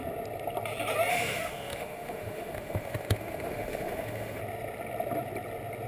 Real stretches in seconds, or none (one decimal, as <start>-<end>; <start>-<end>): 0.0-1.1; 4.4-5.9